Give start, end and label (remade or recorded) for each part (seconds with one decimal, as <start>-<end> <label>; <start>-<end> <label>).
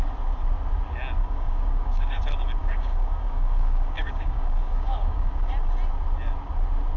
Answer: 0.0-1.2 recorded; 1.2-2.2 remade; 2.2-2.6 recorded; 2.6-5.5 remade; 5.5-7.0 recorded